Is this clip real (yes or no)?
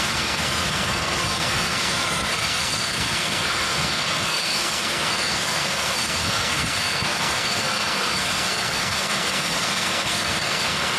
no